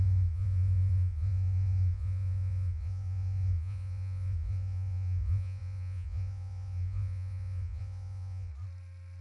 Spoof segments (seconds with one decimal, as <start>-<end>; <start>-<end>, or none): 0.0-8.5